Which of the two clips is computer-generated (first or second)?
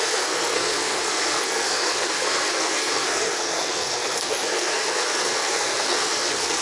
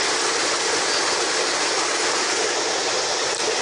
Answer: first